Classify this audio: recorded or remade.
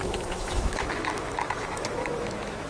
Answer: remade